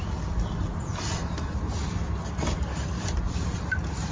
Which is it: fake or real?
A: real